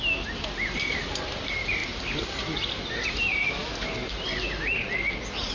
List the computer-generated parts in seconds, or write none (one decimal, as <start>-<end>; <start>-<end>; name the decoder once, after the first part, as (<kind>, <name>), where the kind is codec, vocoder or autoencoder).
none

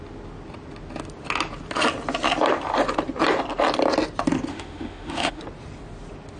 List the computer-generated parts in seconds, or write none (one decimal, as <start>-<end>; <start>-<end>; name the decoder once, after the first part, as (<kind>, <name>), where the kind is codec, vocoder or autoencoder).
4.5-5.4 (autoencoder, DAC-VAE)

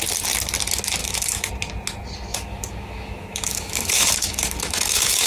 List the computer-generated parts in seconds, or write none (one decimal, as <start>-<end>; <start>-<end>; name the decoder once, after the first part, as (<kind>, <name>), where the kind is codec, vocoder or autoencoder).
1.0-1.5 (autoencoder, DAC-VAE); 2.3-5.3

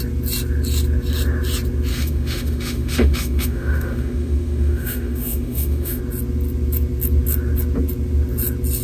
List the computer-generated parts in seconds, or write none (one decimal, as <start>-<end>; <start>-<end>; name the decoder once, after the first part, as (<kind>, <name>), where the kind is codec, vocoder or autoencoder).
1.9-6.0 (autoencoder, DAC-VAE)

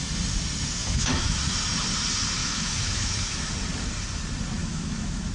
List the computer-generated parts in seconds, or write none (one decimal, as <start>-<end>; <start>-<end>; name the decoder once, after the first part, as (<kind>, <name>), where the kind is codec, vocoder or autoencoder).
0.8-1.4 (autoencoder, DAC-VAE); 2.4-3.5; 4.6-5.3

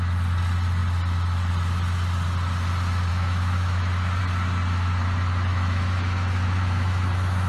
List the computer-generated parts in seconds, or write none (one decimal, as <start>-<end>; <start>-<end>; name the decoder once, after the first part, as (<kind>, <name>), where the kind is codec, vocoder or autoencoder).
3.1-4.2 (autoencoder, DAC-VAE); 5.5-7.5